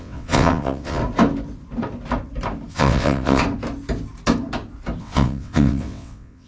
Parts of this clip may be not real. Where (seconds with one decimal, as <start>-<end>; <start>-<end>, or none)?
0.0-1.0; 2.7-3.4; 5.0-6.5